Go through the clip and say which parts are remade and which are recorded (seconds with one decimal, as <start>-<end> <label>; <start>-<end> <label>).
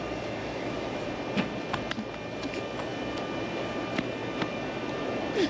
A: 0.0-0.4 recorded; 0.4-1.1 remade; 1.1-5.5 recorded